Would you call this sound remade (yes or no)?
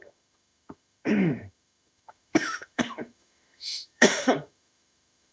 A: yes